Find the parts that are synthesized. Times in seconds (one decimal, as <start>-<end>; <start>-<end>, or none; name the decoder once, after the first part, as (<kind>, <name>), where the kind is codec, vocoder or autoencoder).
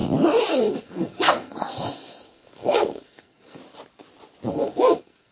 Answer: 0.5-3.6 (codec, SNAC); 4.5-5.3